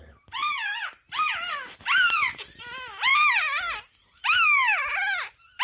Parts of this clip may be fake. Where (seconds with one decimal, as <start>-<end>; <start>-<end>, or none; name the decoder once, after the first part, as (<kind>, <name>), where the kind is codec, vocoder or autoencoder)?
0.4-2.6 (vocoder, BigVGAN v2)